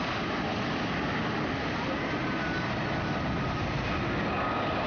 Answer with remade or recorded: recorded